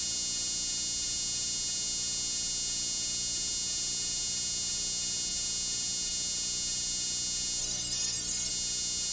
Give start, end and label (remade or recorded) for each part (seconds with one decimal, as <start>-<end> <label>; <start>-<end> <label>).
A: 0.0-7.6 recorded; 7.6-8.5 remade; 8.5-9.1 recorded